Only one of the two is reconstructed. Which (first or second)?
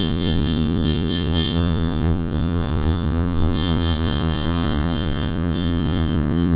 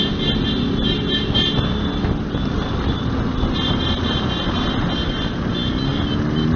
first